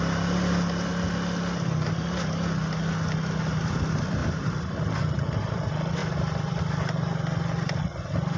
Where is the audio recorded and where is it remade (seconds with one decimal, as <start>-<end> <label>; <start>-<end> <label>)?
0.0-4.2 recorded; 4.2-4.7 remade; 4.7-6.0 recorded; 6.0-6.6 remade; 6.6-8.4 recorded